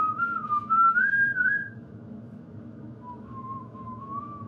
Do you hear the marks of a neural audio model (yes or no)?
yes